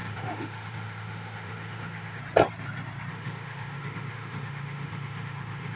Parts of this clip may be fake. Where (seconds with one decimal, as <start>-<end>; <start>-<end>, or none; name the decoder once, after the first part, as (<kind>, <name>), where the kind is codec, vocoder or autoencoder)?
0.0-2.2 (autoencoder, DAC-VAE); 3.1-5.8